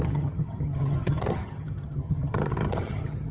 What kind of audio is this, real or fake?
fake